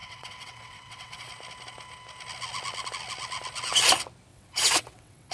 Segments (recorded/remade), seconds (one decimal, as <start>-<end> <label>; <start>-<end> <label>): 0.0-1.3 remade; 1.3-4.3 recorded; 4.3-5.3 remade